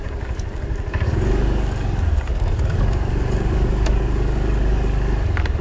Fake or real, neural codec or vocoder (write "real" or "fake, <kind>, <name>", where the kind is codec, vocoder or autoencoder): fake, codec, DAC